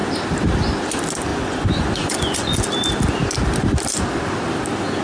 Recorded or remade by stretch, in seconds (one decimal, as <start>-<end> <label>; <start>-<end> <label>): 0.0-1.3 recorded; 1.3-2.5 remade; 2.5-5.0 recorded